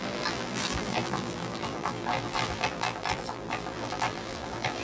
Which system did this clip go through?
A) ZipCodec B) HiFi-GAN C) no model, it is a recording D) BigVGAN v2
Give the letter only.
D